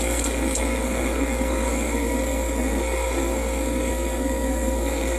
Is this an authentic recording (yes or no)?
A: no